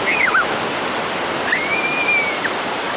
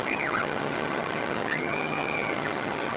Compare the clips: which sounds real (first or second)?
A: first